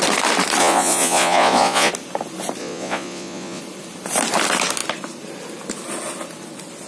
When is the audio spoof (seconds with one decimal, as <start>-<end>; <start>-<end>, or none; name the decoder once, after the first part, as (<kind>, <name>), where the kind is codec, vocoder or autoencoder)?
0.6-1.9 (vocoder, Vocos); 2.6-3.6